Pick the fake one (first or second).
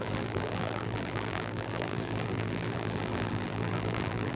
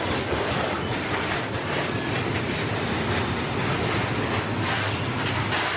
first